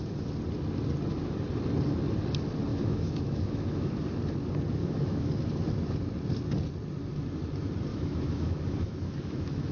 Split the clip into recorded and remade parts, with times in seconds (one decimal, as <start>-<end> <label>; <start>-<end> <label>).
0.0-2.7 recorded; 2.7-3.9 remade; 3.9-4.8 recorded; 4.8-5.3 remade; 5.3-7.9 recorded; 7.9-9.7 remade